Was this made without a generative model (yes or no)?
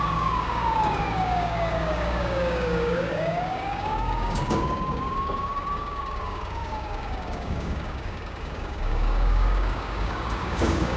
no